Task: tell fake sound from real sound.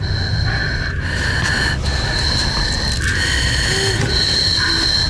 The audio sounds real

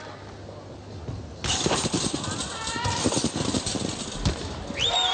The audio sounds real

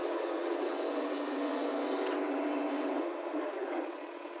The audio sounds fake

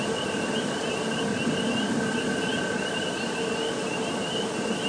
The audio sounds real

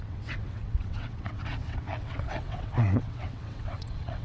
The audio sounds fake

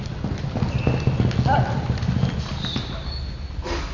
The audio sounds real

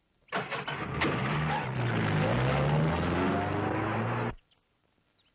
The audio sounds real